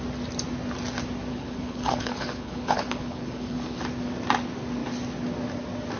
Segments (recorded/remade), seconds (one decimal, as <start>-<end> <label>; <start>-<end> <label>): 0.0-1.3 recorded; 1.3-3.8 remade; 3.8-6.0 recorded